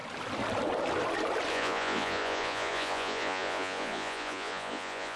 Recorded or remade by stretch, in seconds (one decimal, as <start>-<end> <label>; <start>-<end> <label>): 0.0-1.5 recorded; 1.5-5.2 remade